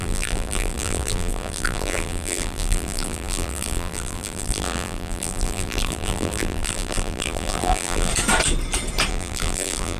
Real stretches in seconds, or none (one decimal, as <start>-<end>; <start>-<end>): 8.1-9.1